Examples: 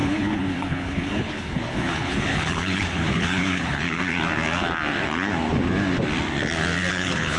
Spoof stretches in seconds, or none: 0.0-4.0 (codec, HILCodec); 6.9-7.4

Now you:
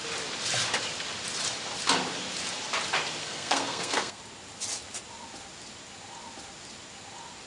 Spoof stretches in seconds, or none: 3.2-4.2 (codec, SNAC)

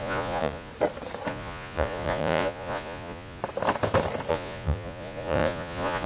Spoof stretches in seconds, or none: 0.0-0.7 (vocoder, Vocos); 1.3-3.4; 4.3-6.1

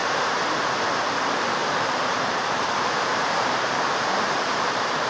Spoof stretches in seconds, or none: 0.0-0.7 (vocoder, BigVGAN v2); 1.6-5.1

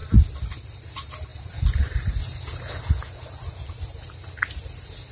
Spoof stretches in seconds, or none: none